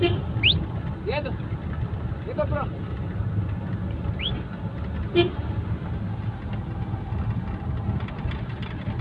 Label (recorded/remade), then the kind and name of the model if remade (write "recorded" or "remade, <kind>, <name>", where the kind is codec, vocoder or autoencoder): recorded